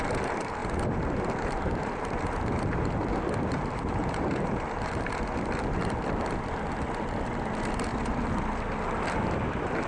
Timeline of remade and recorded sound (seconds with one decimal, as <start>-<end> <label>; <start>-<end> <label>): 0.0-0.6 recorded; 0.6-5.1 remade; 5.1-7.9 recorded; 7.9-8.4 remade; 8.4-9.9 recorded